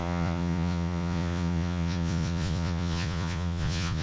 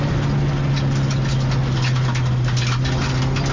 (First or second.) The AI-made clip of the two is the first